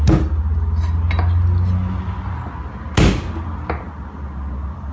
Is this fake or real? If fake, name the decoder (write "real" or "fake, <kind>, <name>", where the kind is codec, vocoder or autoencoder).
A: real